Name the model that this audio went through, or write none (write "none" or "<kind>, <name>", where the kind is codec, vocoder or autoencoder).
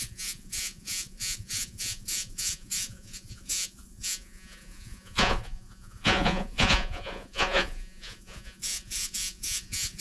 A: vocoder, Vocos